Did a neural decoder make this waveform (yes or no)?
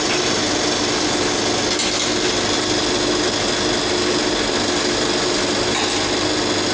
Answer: no